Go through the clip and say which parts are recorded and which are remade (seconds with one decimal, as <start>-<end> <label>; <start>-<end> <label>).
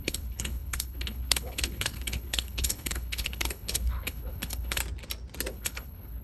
0.0-4.8 remade; 4.8-5.5 recorded; 5.5-6.2 remade